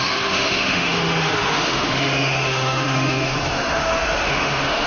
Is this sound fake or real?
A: fake